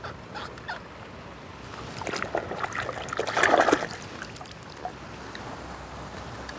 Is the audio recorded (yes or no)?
yes